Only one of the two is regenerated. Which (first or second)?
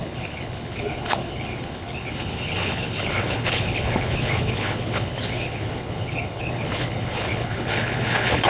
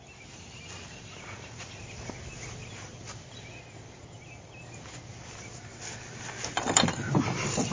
first